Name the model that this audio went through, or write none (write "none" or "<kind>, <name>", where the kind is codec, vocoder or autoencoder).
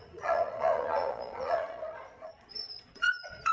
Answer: vocoder, Vocos